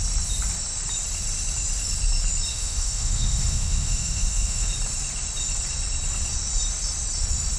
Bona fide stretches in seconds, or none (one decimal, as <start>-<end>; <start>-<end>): 0.0-2.5; 4.7-7.6